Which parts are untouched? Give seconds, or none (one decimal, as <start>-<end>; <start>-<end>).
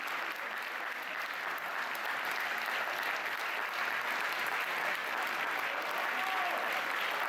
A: 0.0-7.3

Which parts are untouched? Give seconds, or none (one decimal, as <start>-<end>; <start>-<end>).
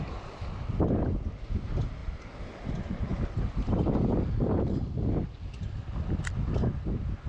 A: 0.0-2.0; 2.7-3.1; 4.8-7.3